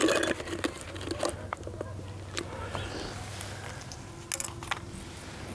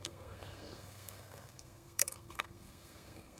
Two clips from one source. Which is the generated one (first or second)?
second